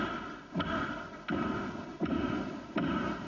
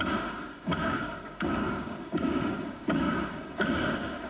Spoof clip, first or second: second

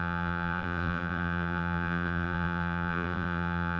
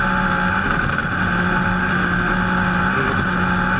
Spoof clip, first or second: first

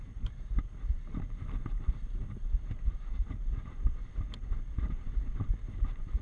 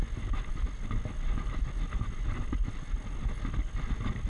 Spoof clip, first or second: first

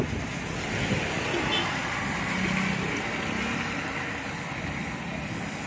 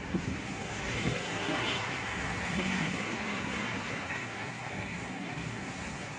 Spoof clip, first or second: second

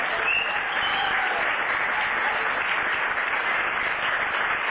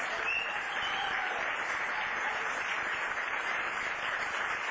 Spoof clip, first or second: second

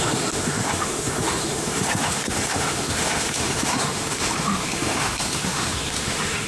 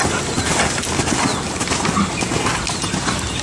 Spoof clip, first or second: first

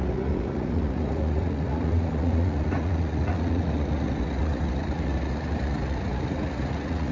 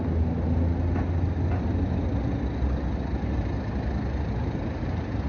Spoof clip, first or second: first